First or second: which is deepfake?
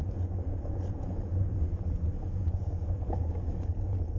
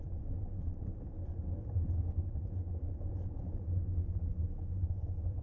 first